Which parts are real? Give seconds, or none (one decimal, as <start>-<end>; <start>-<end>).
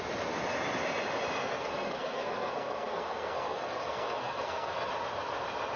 0.0-1.4; 4.9-5.8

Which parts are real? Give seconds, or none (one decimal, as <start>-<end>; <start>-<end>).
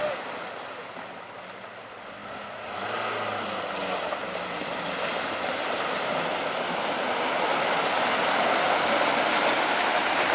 0.0-10.3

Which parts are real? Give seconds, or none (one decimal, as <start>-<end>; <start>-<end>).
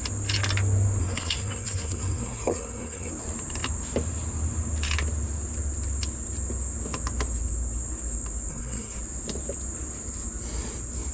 0.0-1.0; 3.1-8.5; 9.0-11.1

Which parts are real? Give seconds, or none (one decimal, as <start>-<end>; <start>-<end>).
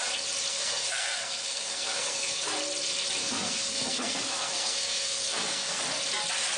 0.0-0.5; 2.5-3.2; 5.8-6.6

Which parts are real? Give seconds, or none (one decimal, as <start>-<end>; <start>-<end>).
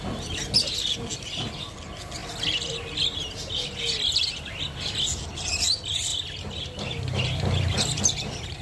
0.0-8.6